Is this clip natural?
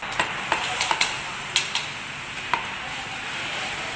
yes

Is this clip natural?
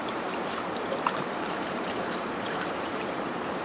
no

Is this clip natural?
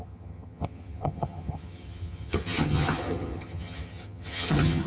no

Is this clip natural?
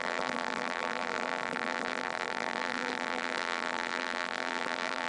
no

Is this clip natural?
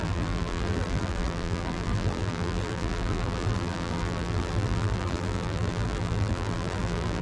no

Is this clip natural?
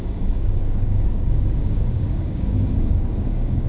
no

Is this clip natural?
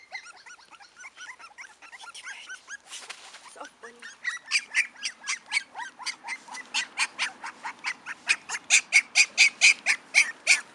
yes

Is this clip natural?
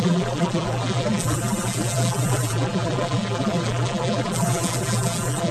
no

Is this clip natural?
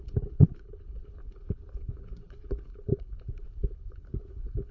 no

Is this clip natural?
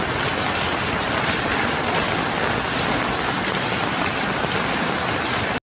yes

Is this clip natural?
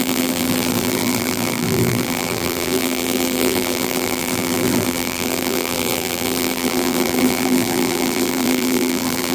no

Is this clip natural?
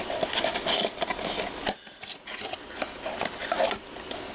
yes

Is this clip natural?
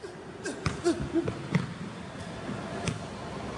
yes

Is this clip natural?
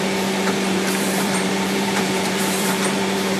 no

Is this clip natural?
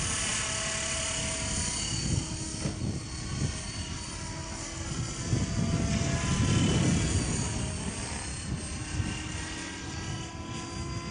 yes